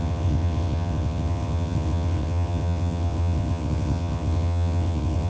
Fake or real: fake